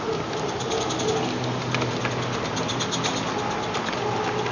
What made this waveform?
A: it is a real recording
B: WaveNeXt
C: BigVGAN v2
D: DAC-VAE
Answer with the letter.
A